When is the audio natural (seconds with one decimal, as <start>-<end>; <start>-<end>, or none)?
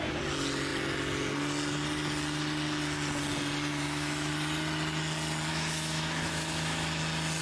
0.0-3.7; 4.3-5.5; 7.0-7.4